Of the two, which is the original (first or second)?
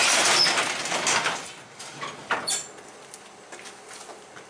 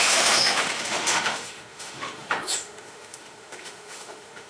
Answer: first